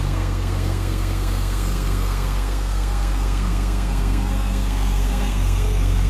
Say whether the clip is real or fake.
fake